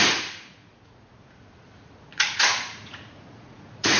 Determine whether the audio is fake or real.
fake